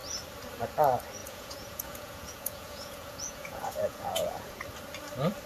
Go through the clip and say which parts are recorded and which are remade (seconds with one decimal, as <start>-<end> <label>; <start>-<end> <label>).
0.0-1.2 recorded; 1.2-4.5 remade; 4.5-5.5 recorded